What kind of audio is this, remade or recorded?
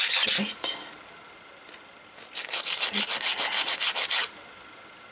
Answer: recorded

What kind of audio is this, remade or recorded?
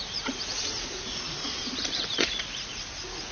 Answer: remade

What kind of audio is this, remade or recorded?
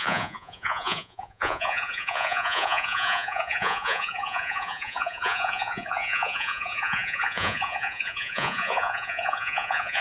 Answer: remade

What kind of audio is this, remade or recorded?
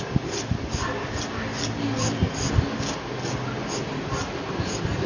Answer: recorded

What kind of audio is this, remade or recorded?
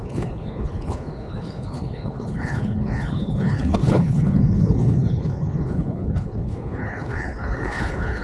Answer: remade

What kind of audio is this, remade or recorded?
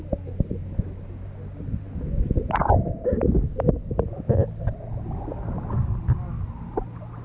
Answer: recorded